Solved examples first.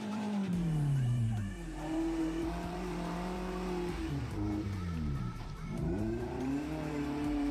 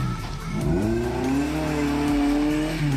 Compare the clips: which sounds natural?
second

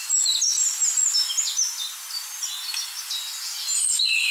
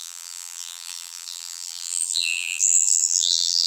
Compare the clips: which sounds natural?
first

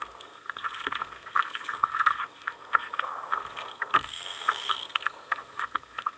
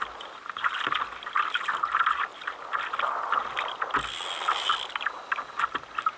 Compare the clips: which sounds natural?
second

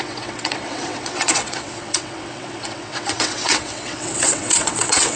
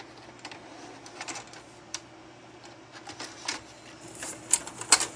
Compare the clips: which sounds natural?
second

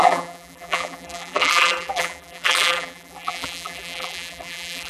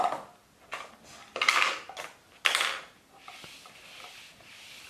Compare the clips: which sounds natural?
second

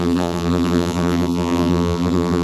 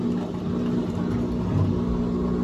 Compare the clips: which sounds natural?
second